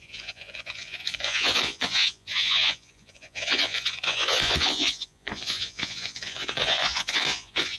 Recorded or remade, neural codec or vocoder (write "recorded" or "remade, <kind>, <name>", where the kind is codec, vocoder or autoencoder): remade, vocoder, Vocos